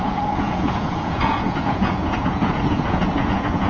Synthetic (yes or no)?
yes